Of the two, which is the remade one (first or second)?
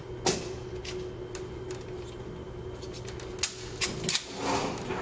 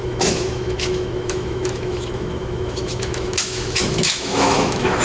second